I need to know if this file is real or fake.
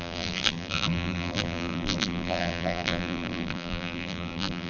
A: fake